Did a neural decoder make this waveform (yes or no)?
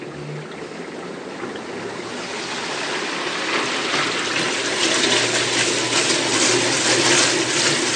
no